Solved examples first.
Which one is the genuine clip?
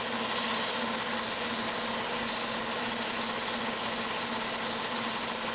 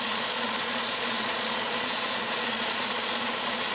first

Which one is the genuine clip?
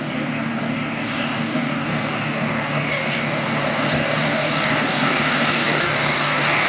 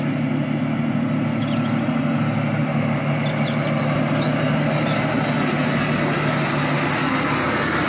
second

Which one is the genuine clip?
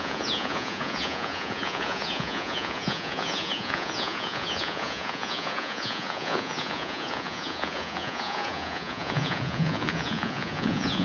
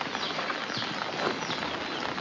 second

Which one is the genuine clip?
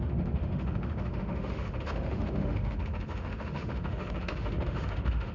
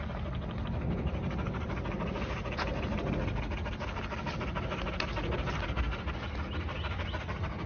second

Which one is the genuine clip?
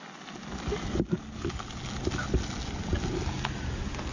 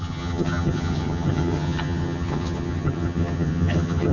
first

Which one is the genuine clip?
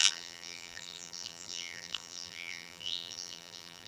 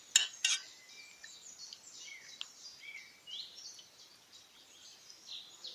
second